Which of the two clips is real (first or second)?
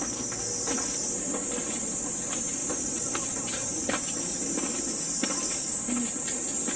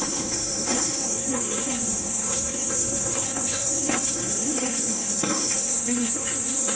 first